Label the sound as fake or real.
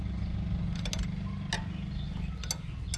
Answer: real